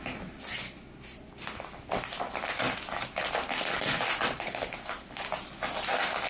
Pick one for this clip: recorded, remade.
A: recorded